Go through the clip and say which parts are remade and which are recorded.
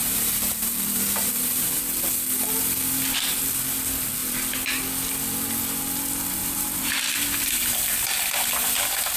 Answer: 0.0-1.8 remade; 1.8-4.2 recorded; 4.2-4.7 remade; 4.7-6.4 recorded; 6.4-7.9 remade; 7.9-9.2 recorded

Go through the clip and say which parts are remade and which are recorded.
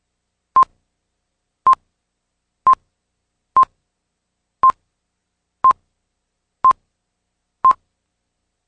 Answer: 0.0-8.7 recorded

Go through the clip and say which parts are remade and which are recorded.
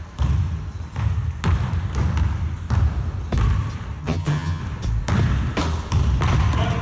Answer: 0.0-4.0 recorded; 4.0-4.6 remade; 4.6-6.8 recorded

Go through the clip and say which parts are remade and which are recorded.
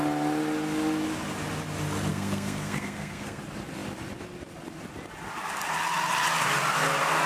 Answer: 0.0-2.1 recorded; 2.1-3.4 remade; 3.4-7.3 recorded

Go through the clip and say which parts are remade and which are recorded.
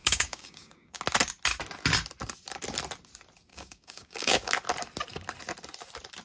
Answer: 0.0-1.0 remade; 1.0-3.5 recorded; 3.5-4.5 remade; 4.5-6.2 recorded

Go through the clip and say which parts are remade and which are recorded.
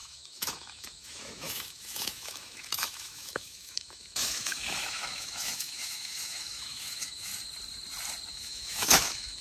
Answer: 0.0-7.3 remade; 7.3-8.3 recorded; 8.3-9.4 remade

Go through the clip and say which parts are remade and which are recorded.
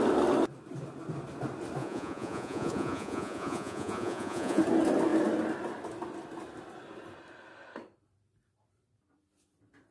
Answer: 0.0-1.8 recorded; 1.8-4.6 remade; 4.6-9.9 recorded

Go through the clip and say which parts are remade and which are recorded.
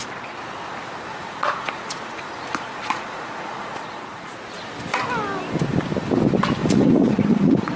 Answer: 0.0-1.1 recorded; 1.1-4.3 remade; 4.3-6.6 recorded; 6.6-7.8 remade